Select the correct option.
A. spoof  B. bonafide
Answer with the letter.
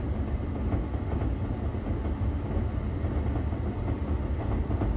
B